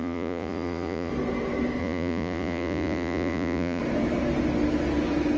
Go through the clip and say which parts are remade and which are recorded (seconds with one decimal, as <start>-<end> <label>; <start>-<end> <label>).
0.0-1.1 remade; 1.1-1.8 recorded; 1.8-3.8 remade; 3.8-5.4 recorded